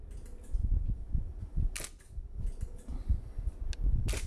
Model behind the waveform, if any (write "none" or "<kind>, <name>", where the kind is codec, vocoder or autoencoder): none